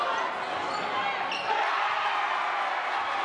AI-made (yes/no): no